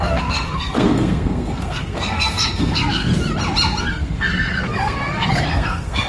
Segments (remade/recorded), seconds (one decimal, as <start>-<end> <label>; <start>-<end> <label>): 0.0-3.1 remade; 3.1-3.8 recorded; 3.8-6.1 remade